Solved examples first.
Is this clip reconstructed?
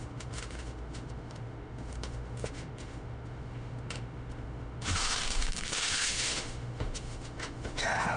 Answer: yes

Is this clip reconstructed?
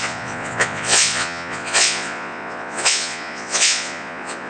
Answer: yes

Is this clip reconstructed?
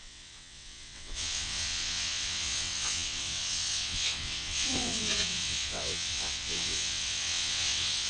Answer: yes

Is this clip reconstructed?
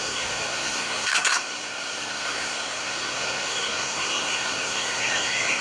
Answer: yes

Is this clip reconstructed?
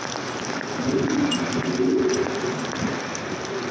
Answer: no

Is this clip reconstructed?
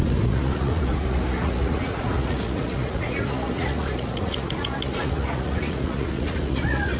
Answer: yes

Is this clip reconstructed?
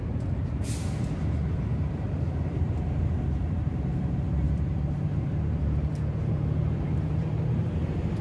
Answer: yes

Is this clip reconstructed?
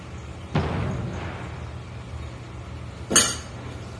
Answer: no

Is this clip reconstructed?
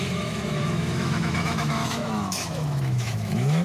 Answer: yes